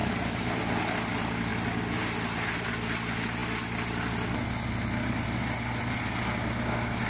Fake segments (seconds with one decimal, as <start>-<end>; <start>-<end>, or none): none